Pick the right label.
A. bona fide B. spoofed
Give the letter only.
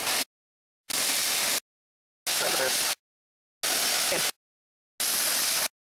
A